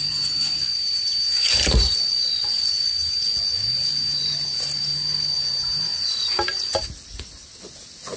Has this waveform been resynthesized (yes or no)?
no